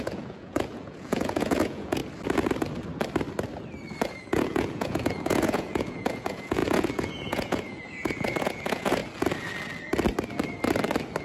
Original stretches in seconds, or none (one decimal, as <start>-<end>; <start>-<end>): 2.0-4.1; 9.0-11.2